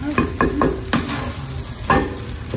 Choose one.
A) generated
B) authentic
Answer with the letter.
B